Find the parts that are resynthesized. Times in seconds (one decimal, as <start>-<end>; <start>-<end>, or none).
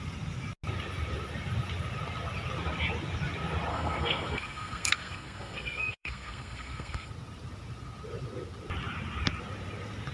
3.7-7.1